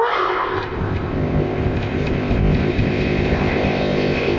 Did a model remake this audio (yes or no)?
yes